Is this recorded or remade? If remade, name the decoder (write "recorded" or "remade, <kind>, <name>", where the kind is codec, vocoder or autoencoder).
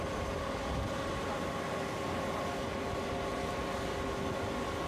recorded